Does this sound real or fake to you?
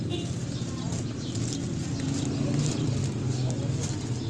real